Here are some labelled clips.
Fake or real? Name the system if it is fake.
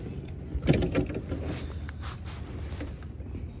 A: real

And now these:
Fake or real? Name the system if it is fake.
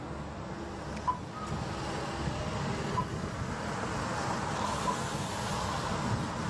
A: real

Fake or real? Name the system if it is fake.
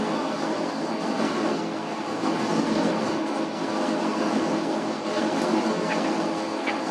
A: fake, codec, SNAC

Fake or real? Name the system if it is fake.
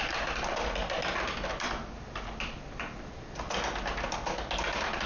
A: real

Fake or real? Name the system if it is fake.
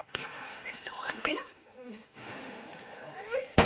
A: fake, autoencoder, DAC-VAE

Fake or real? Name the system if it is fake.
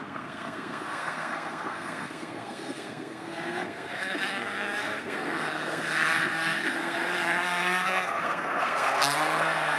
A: fake, codec, SNAC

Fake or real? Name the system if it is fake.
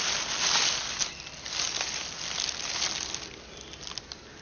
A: real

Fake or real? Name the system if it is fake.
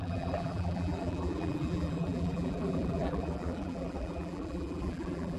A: fake, vocoder, BigVGAN v2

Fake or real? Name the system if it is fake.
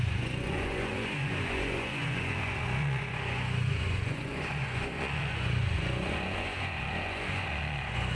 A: fake, vocoder, Vocos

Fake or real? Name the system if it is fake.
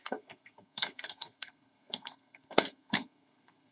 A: fake, codec, SNAC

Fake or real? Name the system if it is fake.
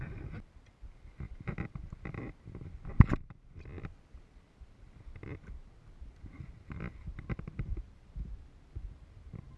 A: real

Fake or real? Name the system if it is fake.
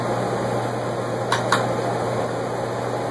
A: real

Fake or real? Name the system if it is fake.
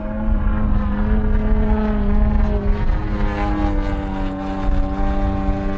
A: real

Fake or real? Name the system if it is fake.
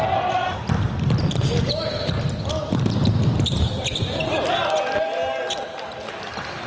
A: real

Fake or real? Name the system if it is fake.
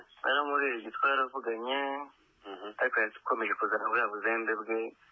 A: real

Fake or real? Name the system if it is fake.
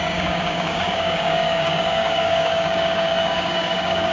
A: fake, codec, DAC